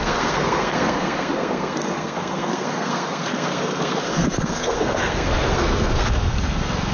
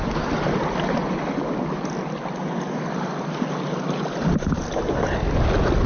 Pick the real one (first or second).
second